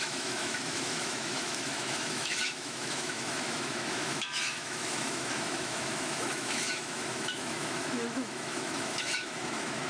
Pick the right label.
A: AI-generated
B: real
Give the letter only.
A